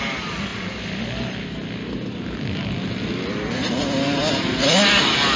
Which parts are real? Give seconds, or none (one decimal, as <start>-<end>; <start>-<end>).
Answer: 0.0-5.4